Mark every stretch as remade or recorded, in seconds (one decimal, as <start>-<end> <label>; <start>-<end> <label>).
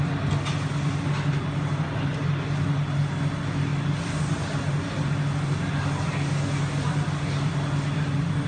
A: 0.0-8.5 recorded